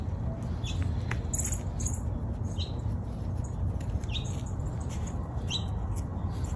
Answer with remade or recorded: recorded